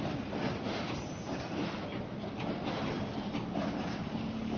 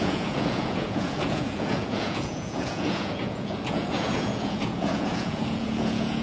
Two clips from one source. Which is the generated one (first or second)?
second